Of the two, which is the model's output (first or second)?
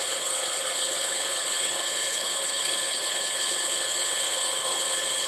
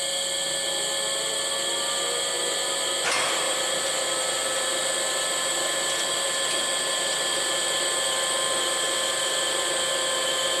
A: first